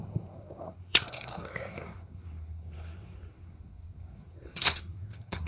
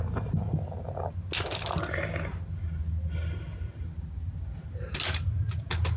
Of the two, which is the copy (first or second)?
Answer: first